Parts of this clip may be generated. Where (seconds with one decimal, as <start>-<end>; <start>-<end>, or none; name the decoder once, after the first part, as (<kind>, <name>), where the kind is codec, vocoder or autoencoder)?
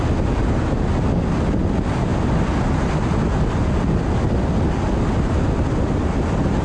none